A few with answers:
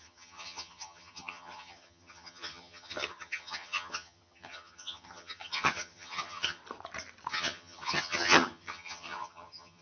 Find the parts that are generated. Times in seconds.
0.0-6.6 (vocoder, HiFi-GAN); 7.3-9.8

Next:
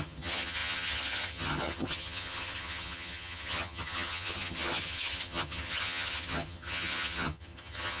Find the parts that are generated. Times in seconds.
0.0-8.0 (vocoder, HiFi-GAN)

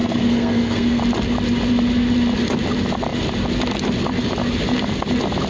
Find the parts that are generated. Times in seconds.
0.0-1.0 (codec, SNAC)

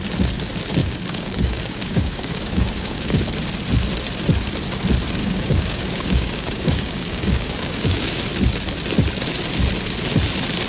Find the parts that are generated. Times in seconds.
0.8-3.2 (codec, DAC); 5.2-8.2

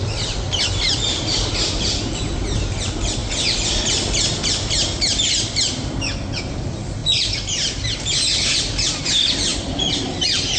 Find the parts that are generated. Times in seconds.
none